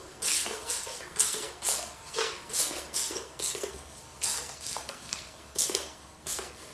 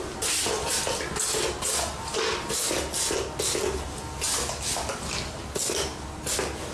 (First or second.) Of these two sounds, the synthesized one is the first